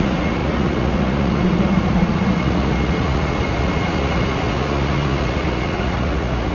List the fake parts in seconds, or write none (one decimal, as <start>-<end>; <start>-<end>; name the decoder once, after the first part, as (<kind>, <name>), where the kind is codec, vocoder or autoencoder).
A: 0.0-6.5 (vocoder, Vocos)